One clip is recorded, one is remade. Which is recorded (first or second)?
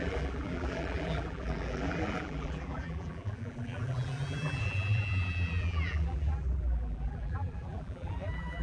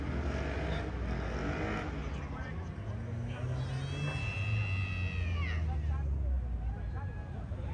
second